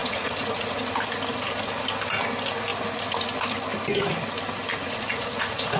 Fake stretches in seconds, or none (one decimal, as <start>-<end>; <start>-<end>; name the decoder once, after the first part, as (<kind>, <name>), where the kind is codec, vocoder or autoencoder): 0.0-0.8 (vocoder, Vocos); 4.7-5.8